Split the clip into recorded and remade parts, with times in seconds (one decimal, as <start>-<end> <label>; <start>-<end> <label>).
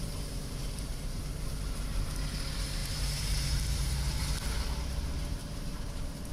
0.0-0.6 recorded; 0.6-1.2 remade; 1.2-2.8 recorded; 2.8-3.9 remade; 3.9-5.4 recorded; 5.4-6.3 remade